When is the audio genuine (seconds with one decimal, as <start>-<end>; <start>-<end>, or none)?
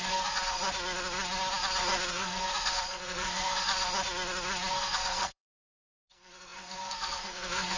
0.6-2.1; 3.7-4.7